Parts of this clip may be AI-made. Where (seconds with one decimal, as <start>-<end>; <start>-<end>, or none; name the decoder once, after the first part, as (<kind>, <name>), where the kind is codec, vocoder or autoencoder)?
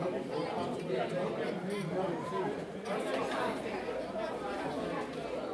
none